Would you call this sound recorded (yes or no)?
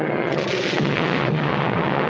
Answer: no